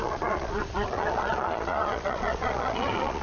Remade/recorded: remade